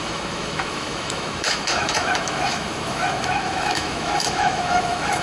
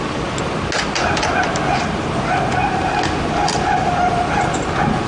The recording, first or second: second